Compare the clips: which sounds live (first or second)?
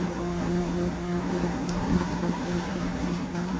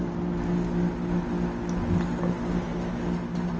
second